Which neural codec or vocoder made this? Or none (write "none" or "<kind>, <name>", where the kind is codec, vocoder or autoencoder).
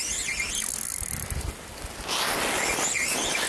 none